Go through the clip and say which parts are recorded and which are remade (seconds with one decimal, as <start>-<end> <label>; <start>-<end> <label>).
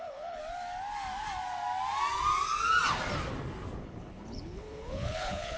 0.0-0.4 remade; 0.4-3.8 recorded; 3.8-5.6 remade